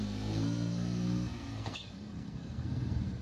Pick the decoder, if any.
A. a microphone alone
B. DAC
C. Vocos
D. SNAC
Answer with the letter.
D